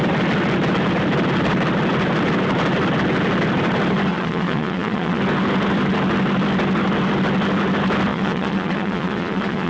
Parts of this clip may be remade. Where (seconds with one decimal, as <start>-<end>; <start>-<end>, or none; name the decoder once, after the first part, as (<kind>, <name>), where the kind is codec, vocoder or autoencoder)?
4.1-5.2 (vocoder, Vocos); 8.1-9.7